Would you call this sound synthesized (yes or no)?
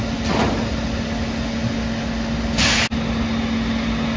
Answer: no